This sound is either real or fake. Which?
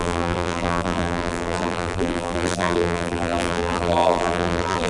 fake